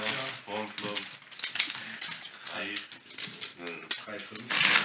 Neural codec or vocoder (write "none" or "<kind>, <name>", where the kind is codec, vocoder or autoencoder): none